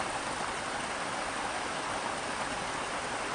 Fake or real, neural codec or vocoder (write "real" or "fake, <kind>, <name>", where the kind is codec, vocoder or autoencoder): real